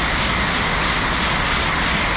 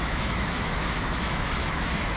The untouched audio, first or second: first